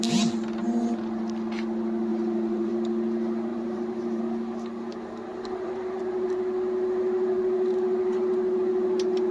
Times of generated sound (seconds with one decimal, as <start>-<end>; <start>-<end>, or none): 2.1-2.7; 3.5-4.2; 5.3-6.0